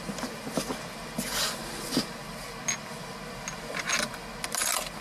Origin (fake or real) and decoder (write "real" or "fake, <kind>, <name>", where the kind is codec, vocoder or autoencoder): real